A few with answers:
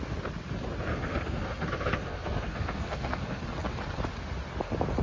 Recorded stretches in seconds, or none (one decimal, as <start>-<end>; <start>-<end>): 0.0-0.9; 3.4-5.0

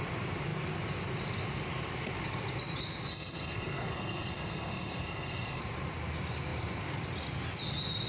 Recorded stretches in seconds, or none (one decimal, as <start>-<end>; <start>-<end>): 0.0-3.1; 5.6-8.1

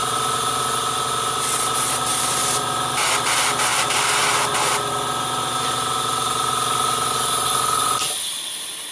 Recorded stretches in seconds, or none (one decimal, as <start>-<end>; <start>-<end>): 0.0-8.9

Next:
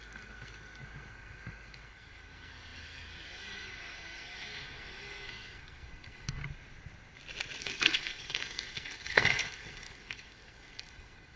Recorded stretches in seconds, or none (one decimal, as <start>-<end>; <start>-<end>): 6.4-7.6